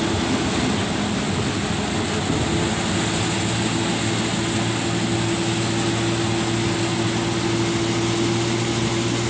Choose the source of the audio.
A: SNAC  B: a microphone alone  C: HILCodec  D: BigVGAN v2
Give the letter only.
B